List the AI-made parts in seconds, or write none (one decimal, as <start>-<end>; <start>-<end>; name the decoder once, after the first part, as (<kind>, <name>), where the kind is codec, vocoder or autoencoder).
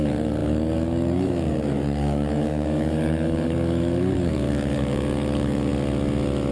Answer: 0.0-5.7 (codec, DAC)